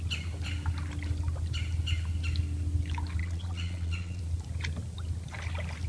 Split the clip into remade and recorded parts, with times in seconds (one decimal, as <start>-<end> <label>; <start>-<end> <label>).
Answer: 0.0-3.2 recorded; 3.2-4.2 remade; 4.2-5.9 recorded